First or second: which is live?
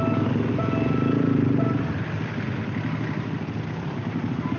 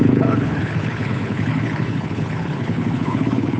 first